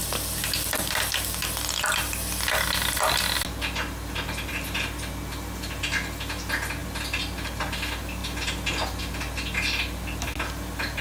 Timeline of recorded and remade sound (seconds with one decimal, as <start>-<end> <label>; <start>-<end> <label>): 0.0-11.0 recorded